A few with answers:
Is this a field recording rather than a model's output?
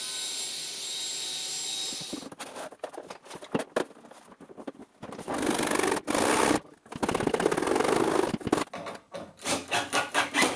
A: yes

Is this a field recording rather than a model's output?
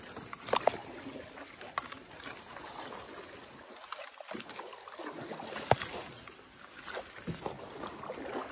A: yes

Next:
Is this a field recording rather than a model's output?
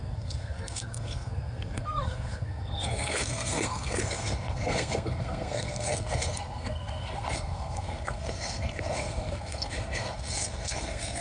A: no